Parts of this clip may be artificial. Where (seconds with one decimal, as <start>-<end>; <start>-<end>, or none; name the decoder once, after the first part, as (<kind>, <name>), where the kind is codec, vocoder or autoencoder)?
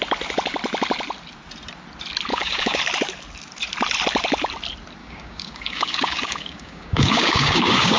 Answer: 2.3-2.8 (codec, DAC); 5.0-8.0